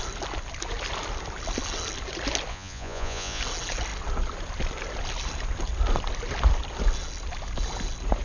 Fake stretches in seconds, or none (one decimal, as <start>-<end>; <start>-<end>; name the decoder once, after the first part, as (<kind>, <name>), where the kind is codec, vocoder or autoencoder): 2.5-3.4 (vocoder, Vocos)